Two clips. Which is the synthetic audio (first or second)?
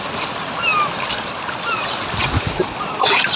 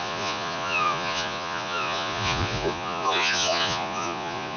second